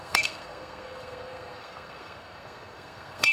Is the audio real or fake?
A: fake